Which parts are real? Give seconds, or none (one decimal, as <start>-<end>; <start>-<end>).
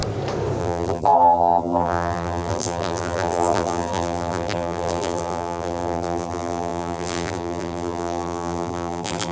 0.0-0.6